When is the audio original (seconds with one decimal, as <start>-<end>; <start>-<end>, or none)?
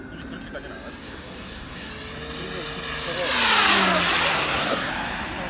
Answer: 0.0-1.0; 1.9-4.3; 4.9-5.5